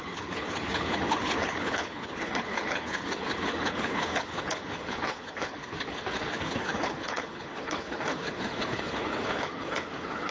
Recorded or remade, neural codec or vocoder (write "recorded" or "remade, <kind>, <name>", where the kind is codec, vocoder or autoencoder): remade, codec, HILCodec